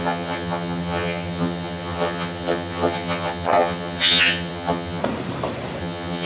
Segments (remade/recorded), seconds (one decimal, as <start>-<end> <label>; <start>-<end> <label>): 0.0-5.0 remade; 5.0-5.8 recorded; 5.8-6.3 remade